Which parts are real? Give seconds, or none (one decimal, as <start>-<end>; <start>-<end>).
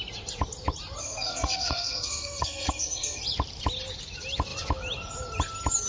0.0-1.0; 3.2-5.9